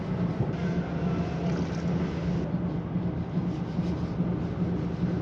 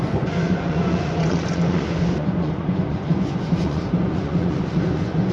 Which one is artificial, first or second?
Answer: second